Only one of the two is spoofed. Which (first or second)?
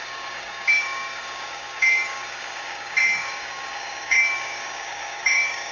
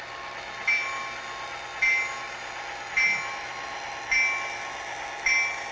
first